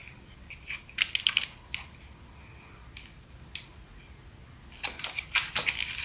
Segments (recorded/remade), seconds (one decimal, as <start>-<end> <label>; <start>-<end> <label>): 0.0-3.6 recorded; 3.6-4.4 remade; 4.4-6.0 recorded